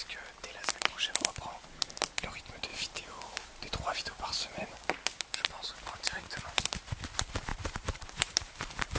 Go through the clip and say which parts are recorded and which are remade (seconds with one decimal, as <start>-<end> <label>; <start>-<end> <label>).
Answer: 0.0-2.7 recorded; 2.7-4.9 remade; 4.9-7.5 recorded; 7.5-9.0 remade